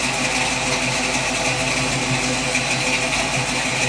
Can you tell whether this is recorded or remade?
recorded